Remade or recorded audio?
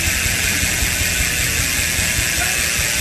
recorded